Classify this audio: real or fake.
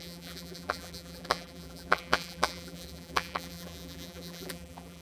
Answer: fake